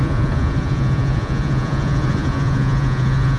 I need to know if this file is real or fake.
fake